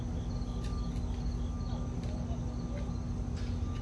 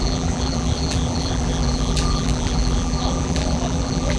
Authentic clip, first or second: first